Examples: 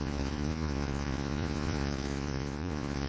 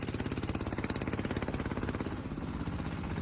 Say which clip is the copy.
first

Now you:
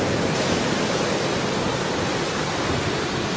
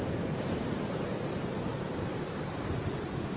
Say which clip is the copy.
second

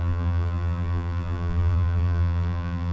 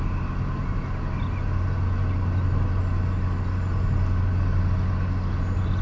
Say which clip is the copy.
first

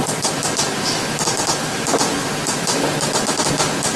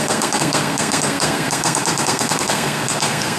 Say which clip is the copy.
second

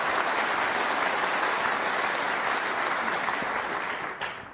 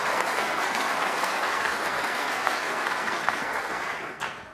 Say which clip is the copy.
second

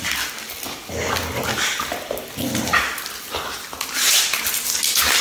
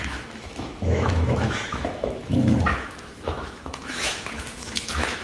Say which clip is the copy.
second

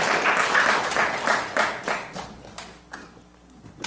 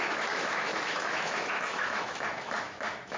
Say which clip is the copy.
second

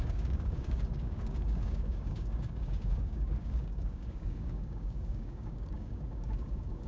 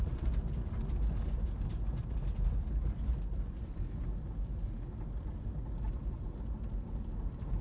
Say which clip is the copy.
first